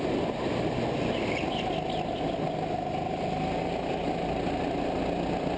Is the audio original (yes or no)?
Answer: yes